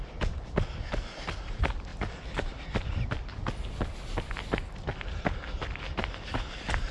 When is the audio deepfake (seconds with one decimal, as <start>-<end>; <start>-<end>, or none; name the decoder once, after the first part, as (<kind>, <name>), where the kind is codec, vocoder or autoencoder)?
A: none